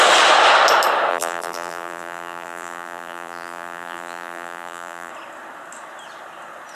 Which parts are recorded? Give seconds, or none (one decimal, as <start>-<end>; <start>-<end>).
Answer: 0.0-1.1; 5.1-6.7